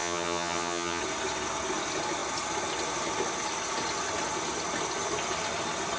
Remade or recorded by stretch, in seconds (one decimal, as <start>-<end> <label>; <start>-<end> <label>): 0.0-1.0 remade; 1.0-6.0 recorded

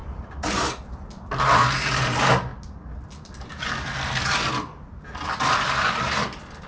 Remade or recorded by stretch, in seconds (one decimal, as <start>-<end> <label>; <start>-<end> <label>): 0.0-6.7 recorded

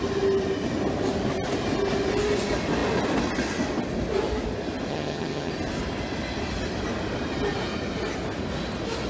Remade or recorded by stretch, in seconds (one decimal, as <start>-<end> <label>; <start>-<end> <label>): 0.0-4.9 recorded; 4.9-5.5 remade; 5.5-9.1 recorded

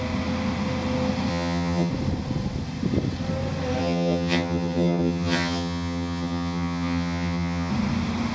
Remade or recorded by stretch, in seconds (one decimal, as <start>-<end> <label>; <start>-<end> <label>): 0.0-1.3 recorded; 1.3-1.9 remade; 1.9-3.8 recorded; 3.8-7.7 remade; 7.7-8.3 recorded

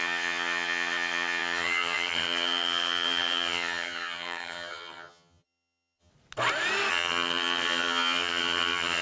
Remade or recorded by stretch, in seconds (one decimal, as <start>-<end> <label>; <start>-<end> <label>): 0.0-6.1 remade; 6.1-6.9 recorded; 6.9-9.0 remade